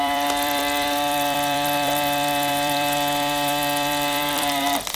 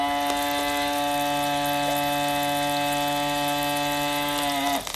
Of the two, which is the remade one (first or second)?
first